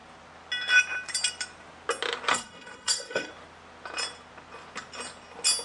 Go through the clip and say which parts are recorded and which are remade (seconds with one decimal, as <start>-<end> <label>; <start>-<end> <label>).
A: 0.0-2.3 recorded; 2.3-3.3 remade; 3.3-5.6 recorded